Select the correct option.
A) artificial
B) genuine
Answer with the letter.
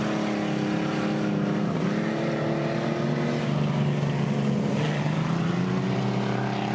B